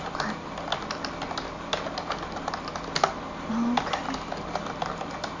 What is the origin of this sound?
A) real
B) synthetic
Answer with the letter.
A